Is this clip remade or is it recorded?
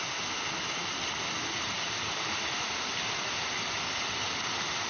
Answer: recorded